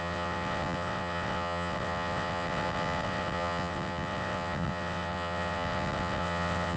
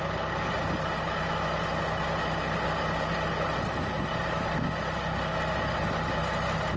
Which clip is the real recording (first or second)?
second